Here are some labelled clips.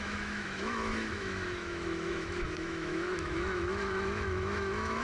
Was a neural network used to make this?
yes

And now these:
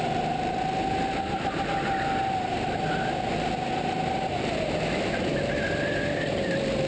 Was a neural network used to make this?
no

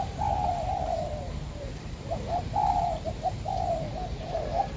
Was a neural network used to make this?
yes